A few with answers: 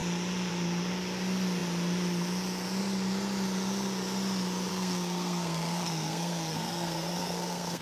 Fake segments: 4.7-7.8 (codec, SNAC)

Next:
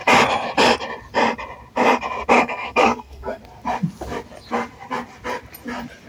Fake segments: 2.4-3.4 (codec, SNAC)

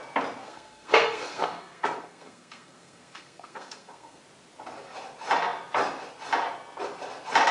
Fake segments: 0.4-4.2 (codec, SNAC)

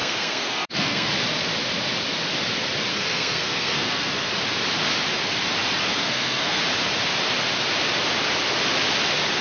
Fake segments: 0.0-1.1 (codec, SNAC); 2.9-4.3; 5.8-6.6

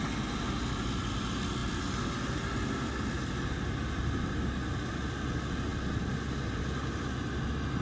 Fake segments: none

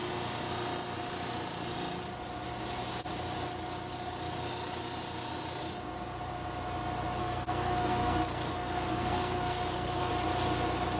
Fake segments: 7.2-10.1 (codec, SNAC)

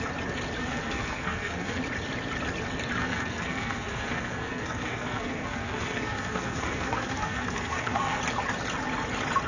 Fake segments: 0.6-1.8 (codec, SNAC); 3.0-8.2